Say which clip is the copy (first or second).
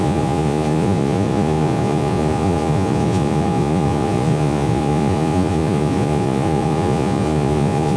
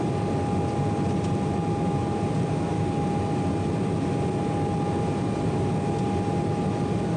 first